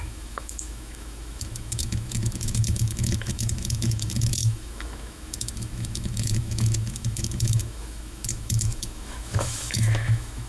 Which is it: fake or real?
fake